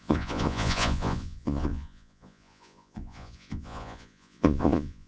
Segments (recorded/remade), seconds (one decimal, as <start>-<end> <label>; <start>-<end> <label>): 0.0-5.1 remade